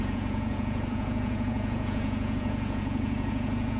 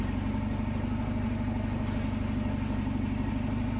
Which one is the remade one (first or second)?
first